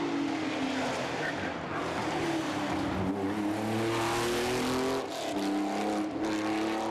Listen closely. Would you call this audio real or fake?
real